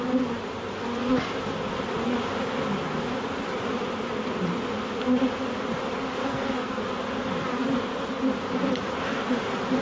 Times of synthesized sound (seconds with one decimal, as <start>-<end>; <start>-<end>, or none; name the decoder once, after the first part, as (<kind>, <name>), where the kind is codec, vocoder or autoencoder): 6.2-6.8 (codec, SNAC)